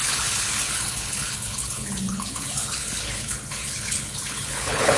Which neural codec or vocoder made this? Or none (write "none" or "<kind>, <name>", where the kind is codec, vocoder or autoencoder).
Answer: codec, HILCodec